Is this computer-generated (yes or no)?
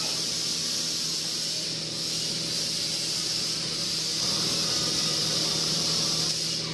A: no